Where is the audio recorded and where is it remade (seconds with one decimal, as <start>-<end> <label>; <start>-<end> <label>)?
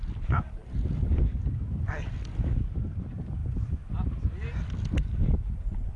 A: 0.0-6.0 recorded